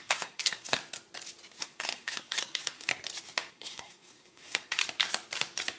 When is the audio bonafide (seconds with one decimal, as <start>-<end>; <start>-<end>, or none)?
0.8-1.6; 2.9-3.5; 4.8-5.8